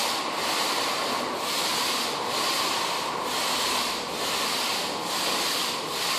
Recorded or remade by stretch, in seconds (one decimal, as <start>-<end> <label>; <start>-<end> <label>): 0.0-6.2 recorded